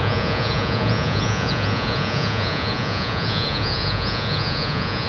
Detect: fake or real fake